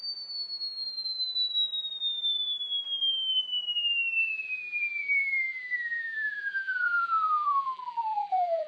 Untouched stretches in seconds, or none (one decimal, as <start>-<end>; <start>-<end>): 0.0-4.2